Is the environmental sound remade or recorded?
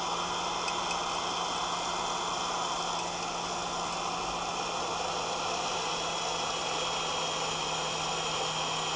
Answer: recorded